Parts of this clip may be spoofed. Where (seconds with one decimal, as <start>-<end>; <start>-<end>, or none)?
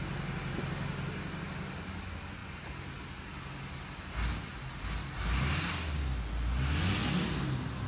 none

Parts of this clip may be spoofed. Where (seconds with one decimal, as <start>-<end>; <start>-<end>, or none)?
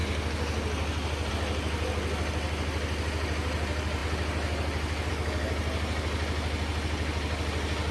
none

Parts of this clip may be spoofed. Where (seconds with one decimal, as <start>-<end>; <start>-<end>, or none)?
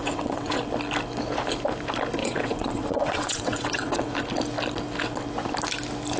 0.0-0.6; 2.2-4.1